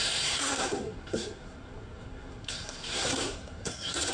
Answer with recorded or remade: remade